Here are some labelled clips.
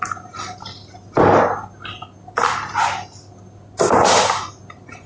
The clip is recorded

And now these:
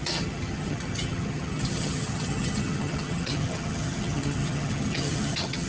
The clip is remade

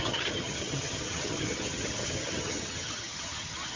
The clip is remade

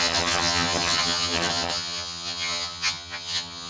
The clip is remade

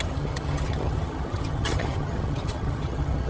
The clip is remade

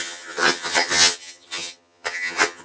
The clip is remade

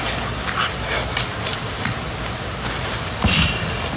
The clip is recorded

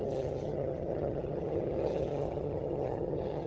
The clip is remade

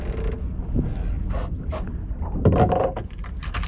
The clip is recorded